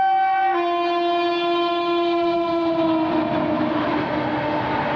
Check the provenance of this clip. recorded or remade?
recorded